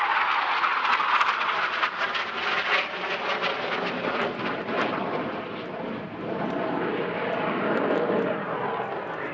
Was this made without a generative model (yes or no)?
yes